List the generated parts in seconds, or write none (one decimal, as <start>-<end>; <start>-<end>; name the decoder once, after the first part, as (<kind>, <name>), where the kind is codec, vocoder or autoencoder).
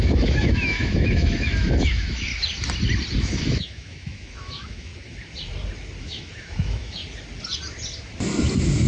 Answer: 0.0-2.3 (autoencoder, DAC-VAE); 3.2-4.9; 6.0-7.0